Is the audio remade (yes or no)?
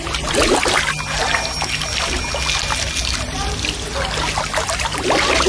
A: no